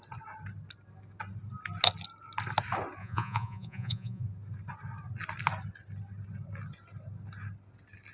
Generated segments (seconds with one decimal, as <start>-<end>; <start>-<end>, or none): 3.0-4.2